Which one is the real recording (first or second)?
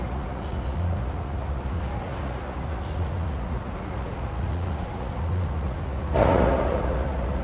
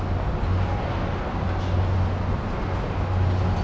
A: second